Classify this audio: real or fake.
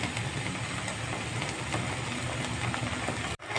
real